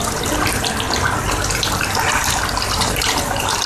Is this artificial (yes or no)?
no